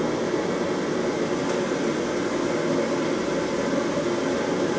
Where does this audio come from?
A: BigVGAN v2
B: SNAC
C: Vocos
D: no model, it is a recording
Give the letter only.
D